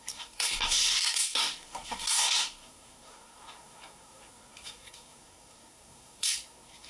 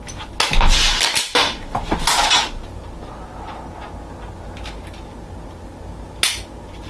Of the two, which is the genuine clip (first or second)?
second